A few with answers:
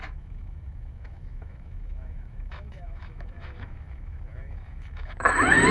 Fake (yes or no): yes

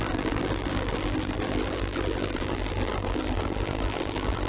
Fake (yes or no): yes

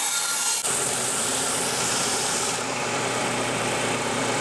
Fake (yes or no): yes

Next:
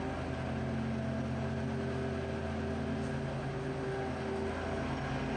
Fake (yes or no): no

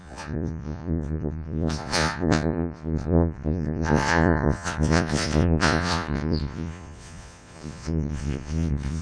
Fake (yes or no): yes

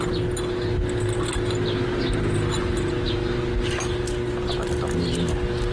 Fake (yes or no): no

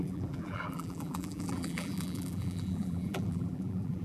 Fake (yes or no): yes